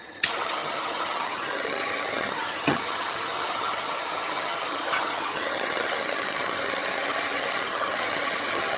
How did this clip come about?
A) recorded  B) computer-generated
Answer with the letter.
B